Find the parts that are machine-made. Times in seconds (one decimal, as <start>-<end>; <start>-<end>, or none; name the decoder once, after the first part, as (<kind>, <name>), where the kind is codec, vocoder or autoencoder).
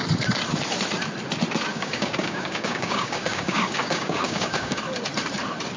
1.7-4.8 (codec, DAC)